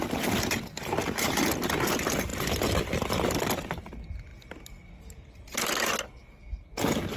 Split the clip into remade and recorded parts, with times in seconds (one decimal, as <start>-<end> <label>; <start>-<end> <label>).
0.0-7.2 recorded